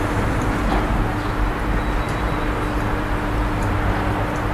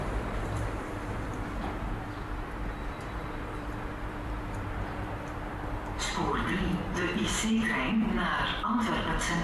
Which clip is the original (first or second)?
first